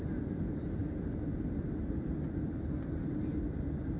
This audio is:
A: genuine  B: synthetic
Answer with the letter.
A